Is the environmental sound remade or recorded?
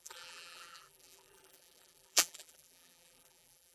remade